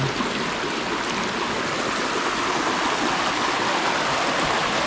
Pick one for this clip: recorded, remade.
recorded